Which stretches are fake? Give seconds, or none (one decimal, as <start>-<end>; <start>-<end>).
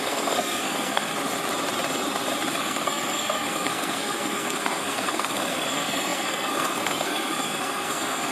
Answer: 0.0-1.1; 2.5-8.3